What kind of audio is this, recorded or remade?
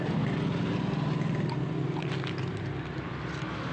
recorded